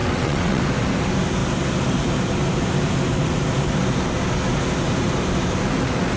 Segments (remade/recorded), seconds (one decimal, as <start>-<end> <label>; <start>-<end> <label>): 0.0-0.6 remade; 0.6-6.2 recorded